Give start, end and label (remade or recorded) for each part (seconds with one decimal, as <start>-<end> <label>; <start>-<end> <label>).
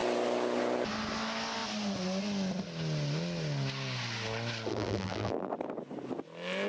0.0-4.7 recorded; 4.7-5.5 remade; 5.5-6.7 recorded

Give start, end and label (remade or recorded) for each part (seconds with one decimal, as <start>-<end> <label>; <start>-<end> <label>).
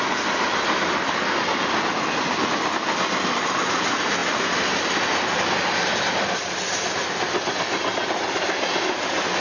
0.0-9.4 recorded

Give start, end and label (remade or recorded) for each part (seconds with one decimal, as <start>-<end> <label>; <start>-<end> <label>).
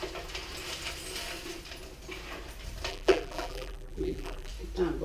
0.0-2.9 recorded; 2.9-4.5 remade; 4.5-5.0 recorded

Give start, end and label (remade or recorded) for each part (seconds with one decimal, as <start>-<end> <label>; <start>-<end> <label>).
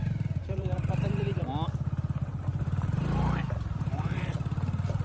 0.0-0.4 recorded; 0.4-1.4 remade; 1.4-2.5 recorded; 2.5-4.4 remade; 4.4-5.0 recorded